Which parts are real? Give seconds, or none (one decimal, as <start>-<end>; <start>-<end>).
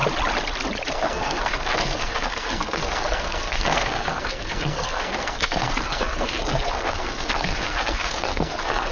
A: 0.0-0.9